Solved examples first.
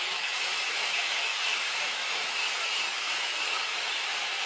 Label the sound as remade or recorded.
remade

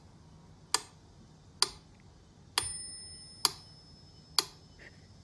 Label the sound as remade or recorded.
recorded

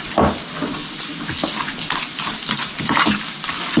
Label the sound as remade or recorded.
recorded